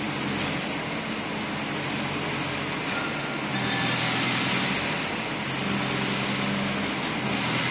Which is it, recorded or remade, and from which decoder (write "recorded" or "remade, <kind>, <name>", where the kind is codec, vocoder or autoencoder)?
recorded